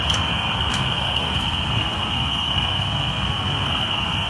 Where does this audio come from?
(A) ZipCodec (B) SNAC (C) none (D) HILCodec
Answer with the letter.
B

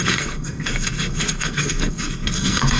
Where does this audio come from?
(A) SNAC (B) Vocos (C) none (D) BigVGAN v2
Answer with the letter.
A